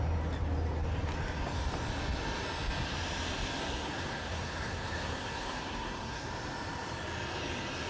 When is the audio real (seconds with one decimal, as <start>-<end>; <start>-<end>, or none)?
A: 0.0-3.6; 6.3-7.9

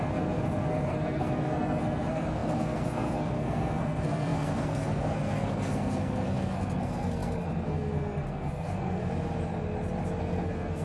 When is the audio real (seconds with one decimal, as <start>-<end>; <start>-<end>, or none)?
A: 9.0-10.2

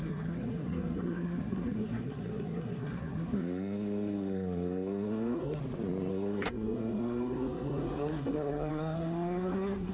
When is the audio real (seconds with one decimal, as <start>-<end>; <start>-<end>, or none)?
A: 5.6-6.1